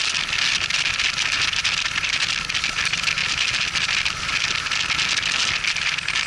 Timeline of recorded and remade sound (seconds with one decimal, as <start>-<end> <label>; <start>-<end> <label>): 0.0-6.3 recorded